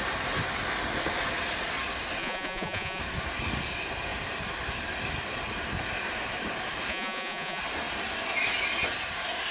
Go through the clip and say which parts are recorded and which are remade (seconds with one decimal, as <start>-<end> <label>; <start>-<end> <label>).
0.0-2.2 recorded; 2.2-3.0 remade; 3.0-6.9 recorded; 6.9-7.6 remade; 7.6-9.5 recorded